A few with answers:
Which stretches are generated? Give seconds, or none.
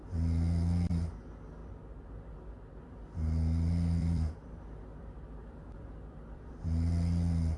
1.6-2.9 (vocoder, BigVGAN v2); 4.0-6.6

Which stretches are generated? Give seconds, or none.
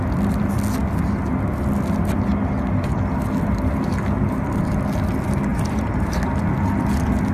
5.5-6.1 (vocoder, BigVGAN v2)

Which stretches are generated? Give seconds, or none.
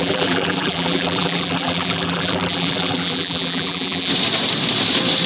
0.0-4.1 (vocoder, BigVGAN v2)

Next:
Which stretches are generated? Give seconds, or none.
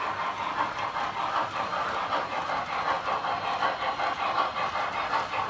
none